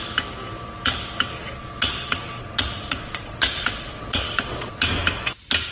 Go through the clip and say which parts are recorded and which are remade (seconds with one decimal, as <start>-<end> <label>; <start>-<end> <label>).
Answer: 0.0-1.4 recorded; 1.4-4.8 remade; 4.8-5.7 recorded